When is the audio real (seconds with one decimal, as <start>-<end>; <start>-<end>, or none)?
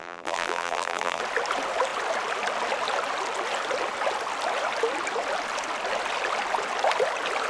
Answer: 1.2-7.5